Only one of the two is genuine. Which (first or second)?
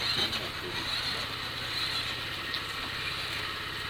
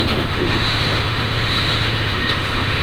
first